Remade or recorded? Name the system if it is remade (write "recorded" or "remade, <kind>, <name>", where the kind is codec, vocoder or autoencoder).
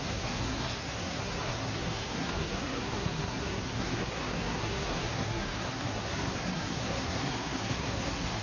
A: remade, codec, SNAC